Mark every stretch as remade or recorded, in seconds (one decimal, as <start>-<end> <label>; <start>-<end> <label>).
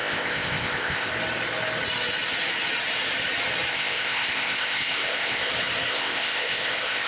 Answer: 0.0-1.1 remade; 1.1-3.7 recorded; 3.7-5.5 remade; 5.5-5.9 recorded; 5.9-7.1 remade